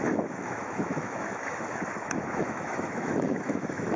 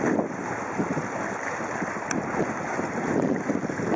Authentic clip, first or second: second